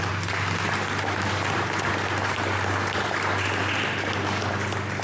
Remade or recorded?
recorded